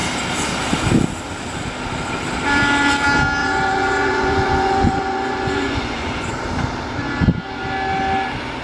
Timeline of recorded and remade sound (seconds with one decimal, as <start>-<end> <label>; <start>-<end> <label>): 0.0-3.4 recorded; 3.4-6.3 remade; 6.3-8.6 recorded